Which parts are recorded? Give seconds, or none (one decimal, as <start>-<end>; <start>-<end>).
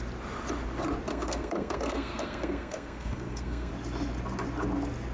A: 0.0-1.1; 3.7-5.1